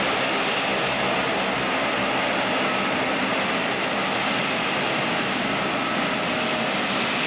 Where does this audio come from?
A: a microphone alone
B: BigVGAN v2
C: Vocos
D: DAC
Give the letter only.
A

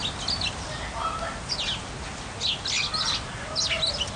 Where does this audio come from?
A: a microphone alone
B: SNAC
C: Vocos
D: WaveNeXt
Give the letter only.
A